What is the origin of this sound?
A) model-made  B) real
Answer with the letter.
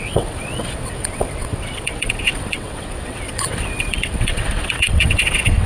A